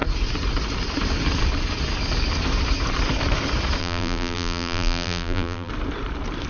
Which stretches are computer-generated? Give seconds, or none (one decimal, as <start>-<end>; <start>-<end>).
3.8-5.7